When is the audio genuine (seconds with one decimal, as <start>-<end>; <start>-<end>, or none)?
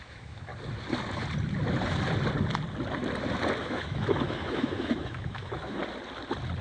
0.5-3.6; 5.8-6.6